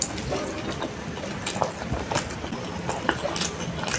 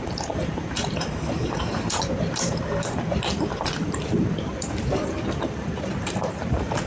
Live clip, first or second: first